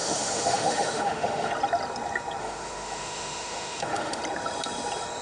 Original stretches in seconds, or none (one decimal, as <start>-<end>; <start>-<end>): 1.5-2.4; 4.2-5.2